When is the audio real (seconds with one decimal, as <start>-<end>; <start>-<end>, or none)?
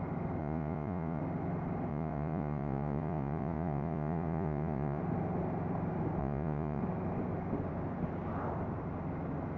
0.0-0.4; 1.2-1.9; 5.0-6.2; 6.8-9.6